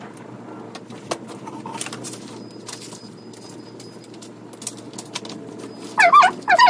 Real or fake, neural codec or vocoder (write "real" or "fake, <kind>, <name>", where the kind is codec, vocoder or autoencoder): real